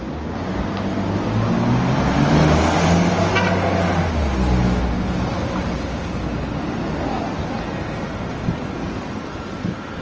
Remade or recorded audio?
recorded